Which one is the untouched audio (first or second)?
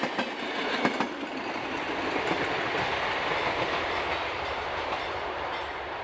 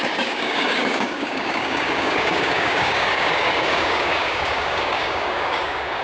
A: first